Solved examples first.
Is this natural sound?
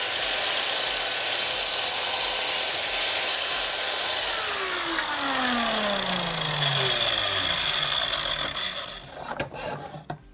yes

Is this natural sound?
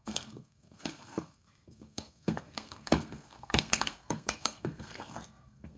no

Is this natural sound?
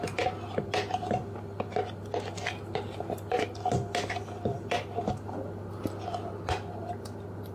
yes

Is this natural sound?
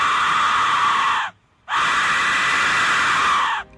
yes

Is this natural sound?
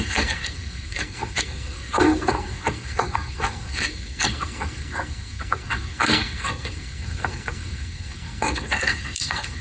no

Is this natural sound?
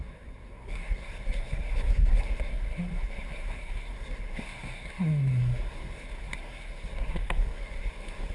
no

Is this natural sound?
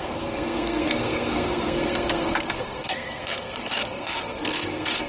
no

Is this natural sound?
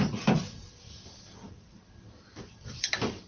yes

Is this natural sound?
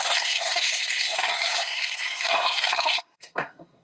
no